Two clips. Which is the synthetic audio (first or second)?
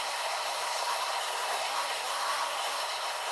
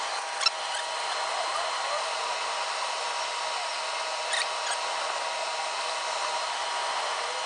first